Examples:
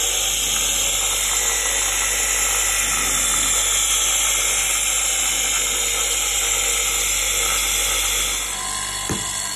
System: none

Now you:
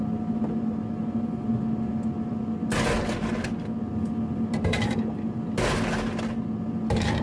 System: none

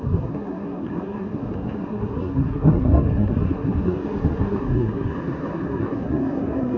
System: codec, SNAC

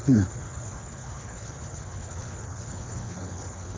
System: codec, HILCodec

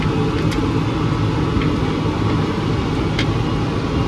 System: none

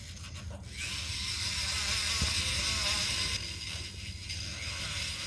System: none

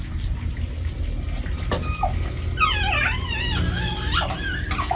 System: none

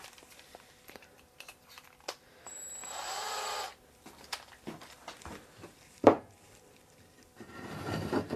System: vocoder, BigVGAN v2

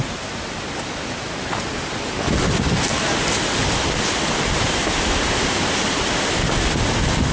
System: none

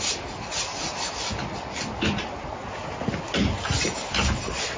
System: none